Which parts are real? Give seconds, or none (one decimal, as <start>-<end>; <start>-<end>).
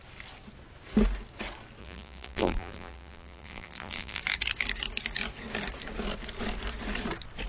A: 0.0-1.8; 4.2-7.5